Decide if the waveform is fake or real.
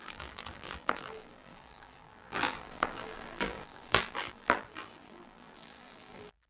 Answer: fake